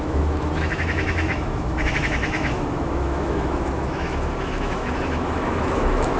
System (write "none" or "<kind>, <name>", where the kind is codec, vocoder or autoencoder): autoencoder, DAC-VAE